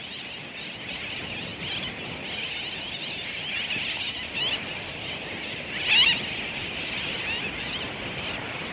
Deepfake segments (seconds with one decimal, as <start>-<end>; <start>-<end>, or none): none